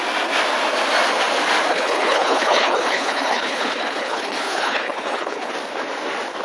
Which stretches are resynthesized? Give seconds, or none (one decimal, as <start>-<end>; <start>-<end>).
1.7-5.5